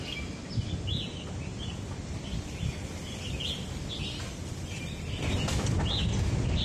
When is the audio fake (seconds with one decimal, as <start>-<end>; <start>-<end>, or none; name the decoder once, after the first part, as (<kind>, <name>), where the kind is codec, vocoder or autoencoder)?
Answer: none